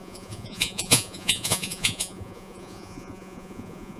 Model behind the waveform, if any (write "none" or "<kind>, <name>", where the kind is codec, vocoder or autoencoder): vocoder, Vocos